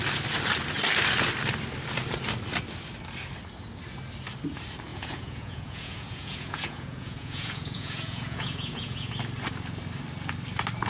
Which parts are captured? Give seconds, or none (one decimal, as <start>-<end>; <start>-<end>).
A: 0.0-4.9; 9.1-10.9